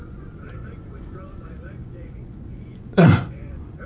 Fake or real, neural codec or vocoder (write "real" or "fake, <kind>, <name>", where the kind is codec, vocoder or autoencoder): fake, vocoder, Vocos